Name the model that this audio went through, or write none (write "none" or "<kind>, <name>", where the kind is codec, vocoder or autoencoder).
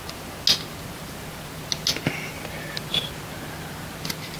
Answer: none